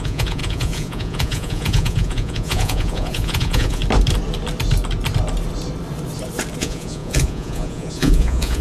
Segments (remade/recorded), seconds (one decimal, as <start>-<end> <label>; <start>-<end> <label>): 0.0-3.8 remade; 3.8-6.6 recorded; 6.6-8.6 remade